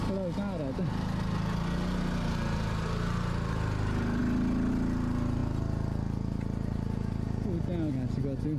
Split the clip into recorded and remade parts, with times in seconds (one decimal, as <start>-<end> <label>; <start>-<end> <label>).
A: 0.0-4.2 recorded; 4.2-4.7 remade; 4.7-8.6 recorded

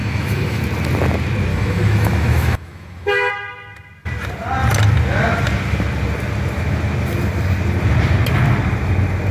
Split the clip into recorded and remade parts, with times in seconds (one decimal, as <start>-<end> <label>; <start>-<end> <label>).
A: 0.0-0.6 remade; 0.6-1.5 recorded; 1.5-3.3 remade; 3.3-9.3 recorded

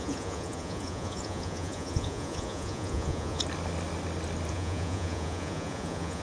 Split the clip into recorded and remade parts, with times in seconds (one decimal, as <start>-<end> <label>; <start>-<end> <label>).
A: 0.0-3.4 remade; 3.4-4.5 recorded; 4.5-6.2 remade